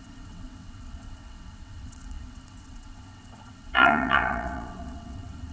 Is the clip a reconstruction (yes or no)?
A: yes